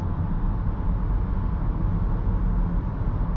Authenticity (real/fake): real